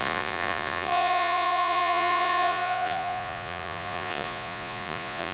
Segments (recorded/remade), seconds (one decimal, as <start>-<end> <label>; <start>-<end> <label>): 0.0-5.3 remade